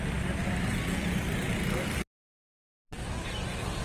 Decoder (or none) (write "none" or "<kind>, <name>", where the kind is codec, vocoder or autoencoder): none